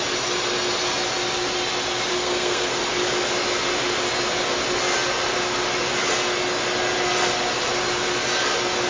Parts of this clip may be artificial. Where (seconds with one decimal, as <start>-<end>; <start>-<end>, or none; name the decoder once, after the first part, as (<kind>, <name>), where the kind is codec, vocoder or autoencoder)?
2.1-2.8 (codec, SNAC)